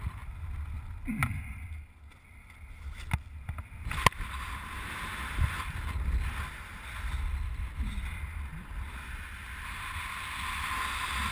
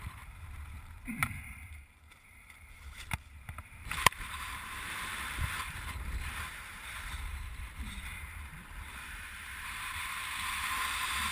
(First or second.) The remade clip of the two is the second